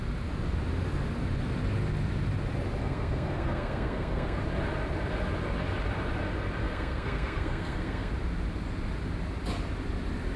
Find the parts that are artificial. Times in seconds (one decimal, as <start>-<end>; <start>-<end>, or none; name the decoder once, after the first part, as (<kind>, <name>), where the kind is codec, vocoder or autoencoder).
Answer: 2.8-4.4 (codec, SNAC); 6.6-8.1